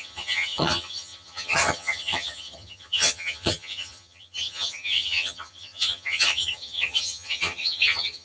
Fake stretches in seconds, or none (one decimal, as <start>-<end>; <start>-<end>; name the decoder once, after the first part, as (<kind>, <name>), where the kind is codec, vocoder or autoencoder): 0.0-8.2 (vocoder, HiFi-GAN)